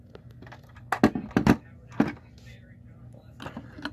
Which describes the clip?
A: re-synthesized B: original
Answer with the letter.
B